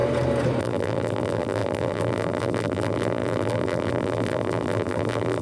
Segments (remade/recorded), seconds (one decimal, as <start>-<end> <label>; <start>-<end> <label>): 0.0-0.6 recorded; 0.6-5.4 remade